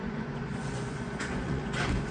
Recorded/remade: remade